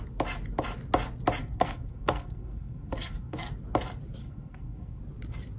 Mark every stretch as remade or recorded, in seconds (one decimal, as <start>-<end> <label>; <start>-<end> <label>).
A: 0.0-1.4 recorded; 1.4-3.5 remade; 3.5-4.2 recorded; 4.2-5.0 remade; 5.0-5.6 recorded